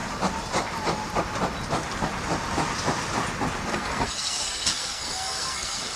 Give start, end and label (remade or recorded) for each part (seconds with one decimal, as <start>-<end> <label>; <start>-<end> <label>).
0.0-3.7 recorded; 3.7-6.0 remade